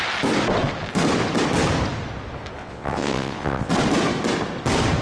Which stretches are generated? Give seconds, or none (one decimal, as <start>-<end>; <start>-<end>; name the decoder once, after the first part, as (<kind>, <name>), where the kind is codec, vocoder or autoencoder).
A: 2.6-3.7 (vocoder, WaveNeXt)